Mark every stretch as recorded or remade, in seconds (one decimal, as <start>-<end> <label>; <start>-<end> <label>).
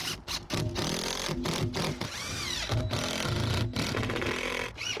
0.0-5.0 recorded